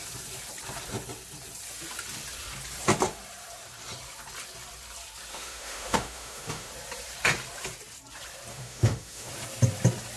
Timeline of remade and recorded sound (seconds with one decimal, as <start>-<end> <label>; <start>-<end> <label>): 0.0-5.3 recorded; 5.3-6.7 remade; 6.7-8.5 recorded; 8.5-9.3 remade; 9.3-10.2 recorded